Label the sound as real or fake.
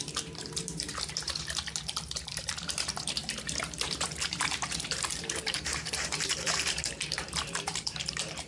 fake